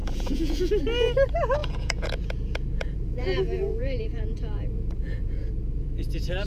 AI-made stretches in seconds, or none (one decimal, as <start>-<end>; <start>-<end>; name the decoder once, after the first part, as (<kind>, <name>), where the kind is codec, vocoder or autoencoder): 0.0-0.7 (vocoder, Vocos); 1.6-5.5